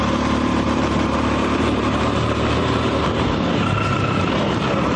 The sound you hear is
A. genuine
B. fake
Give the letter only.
B